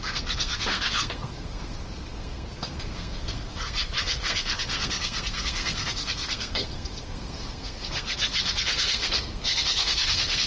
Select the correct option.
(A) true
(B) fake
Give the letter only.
B